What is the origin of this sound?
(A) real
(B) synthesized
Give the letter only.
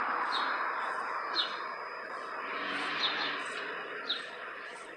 A